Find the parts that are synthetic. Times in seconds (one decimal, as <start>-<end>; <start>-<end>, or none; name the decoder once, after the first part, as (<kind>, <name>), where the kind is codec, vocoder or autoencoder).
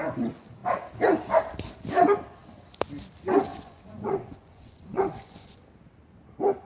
3.5-5.6 (vocoder, Vocos)